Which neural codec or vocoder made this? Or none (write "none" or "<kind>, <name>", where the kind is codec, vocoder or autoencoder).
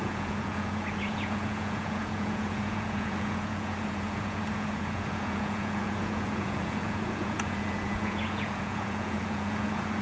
vocoder, Vocos